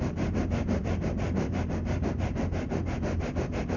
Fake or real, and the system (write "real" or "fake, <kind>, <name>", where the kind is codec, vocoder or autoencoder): real